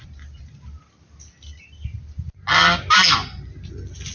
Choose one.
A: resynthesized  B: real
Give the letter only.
B